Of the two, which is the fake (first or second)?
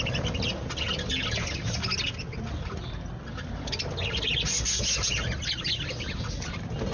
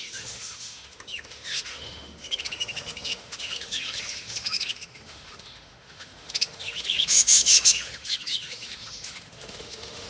second